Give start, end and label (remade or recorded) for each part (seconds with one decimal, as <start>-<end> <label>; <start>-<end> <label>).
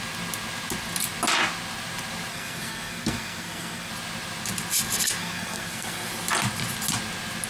0.0-2.3 recorded; 2.3-3.9 remade; 3.9-5.2 recorded; 5.2-6.1 remade; 6.1-7.5 recorded